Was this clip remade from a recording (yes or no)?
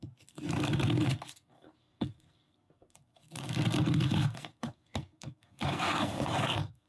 yes